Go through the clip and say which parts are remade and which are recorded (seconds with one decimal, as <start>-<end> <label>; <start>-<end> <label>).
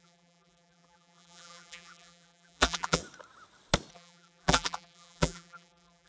0.0-3.0 remade; 3.0-3.9 recorded; 3.9-6.1 remade